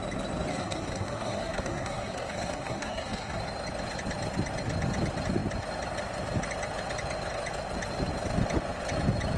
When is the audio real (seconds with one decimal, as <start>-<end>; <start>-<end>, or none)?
0.0-0.5; 3.4-9.4